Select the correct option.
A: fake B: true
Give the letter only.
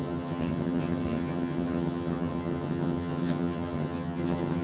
A